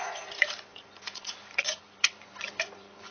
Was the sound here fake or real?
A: fake